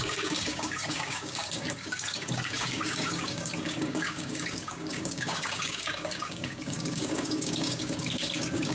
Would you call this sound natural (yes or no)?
no